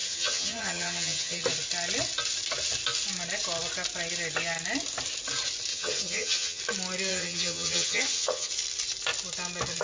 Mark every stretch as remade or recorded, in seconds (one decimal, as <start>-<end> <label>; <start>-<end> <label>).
0.0-1.4 remade; 1.4-5.7 recorded; 5.7-6.6 remade; 6.6-7.1 recorded; 7.1-8.5 remade; 8.5-9.8 recorded